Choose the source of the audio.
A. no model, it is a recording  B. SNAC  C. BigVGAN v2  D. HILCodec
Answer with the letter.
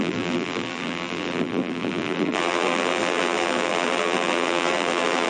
C